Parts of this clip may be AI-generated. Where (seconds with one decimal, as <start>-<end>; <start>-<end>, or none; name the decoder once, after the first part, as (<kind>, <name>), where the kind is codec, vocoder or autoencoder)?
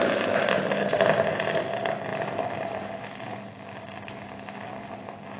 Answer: none